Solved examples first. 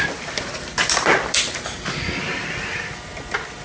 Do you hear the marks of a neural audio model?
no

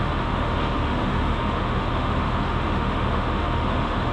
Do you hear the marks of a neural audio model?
yes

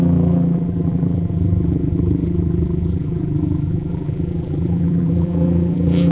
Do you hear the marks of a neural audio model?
yes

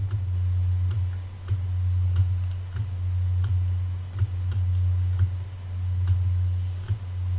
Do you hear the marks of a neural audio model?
no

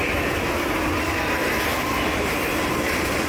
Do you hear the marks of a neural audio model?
no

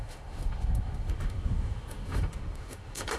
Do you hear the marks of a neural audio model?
yes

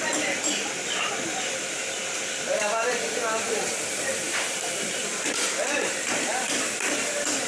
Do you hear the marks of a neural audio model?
yes